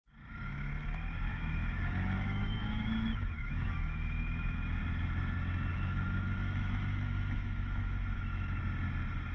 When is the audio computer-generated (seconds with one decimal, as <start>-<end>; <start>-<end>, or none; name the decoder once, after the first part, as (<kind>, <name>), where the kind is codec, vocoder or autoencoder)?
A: 1.3-4.8 (autoencoder, DAC-VAE); 5.7-8.6